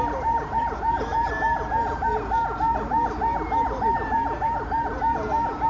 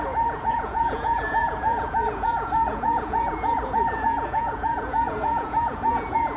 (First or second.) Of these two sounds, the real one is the first